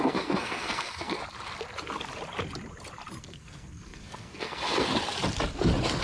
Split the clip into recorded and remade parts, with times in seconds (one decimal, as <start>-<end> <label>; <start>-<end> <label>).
0.0-1.2 remade; 1.2-3.2 recorded; 3.2-4.9 remade; 4.9-6.0 recorded